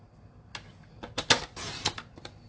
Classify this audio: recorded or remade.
recorded